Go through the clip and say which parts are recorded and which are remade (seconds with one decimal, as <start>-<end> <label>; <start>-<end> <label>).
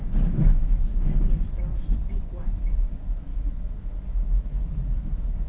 0.0-3.3 recorded; 3.3-5.5 remade